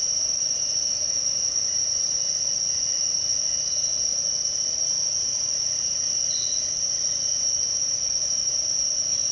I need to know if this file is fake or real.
real